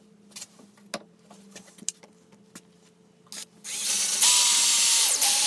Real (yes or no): yes